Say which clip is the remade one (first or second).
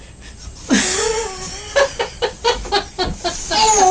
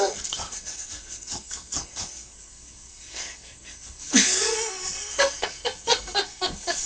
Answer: second